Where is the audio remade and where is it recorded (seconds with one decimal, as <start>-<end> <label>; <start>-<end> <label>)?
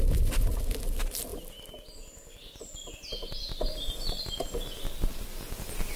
0.0-6.0 recorded